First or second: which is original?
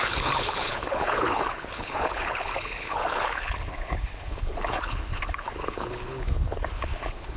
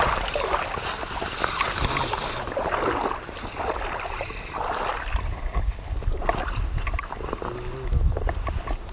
second